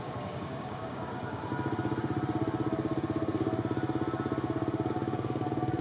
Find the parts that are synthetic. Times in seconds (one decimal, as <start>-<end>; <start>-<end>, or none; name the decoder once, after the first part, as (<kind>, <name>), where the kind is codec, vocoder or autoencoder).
0.0-1.4 (codec, DAC); 4.9-5.8